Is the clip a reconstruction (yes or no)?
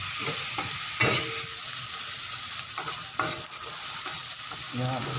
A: no